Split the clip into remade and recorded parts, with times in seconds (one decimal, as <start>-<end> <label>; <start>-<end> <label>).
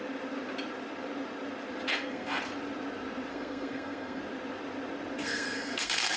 0.0-1.9 recorded; 1.9-2.4 remade; 2.4-3.3 recorded; 3.3-4.2 remade; 4.2-5.2 recorded; 5.2-6.2 remade